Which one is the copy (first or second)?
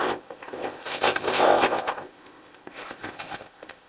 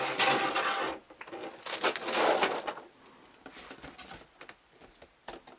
first